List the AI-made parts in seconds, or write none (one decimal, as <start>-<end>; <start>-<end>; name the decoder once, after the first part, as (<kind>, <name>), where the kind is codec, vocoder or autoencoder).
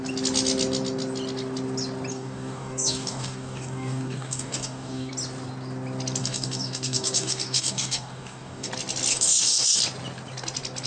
2.1-5.1 (codec, DAC); 6.2-8.7; 9.1-9.8